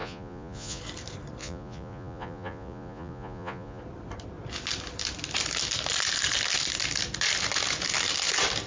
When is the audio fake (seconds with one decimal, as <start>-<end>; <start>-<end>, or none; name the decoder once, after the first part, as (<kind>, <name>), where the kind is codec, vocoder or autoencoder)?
0.0-0.8 (vocoder, Vocos); 1.4-3.8